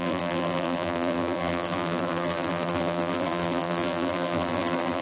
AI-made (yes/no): yes